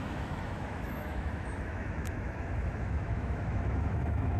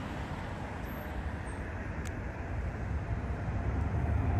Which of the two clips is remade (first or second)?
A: first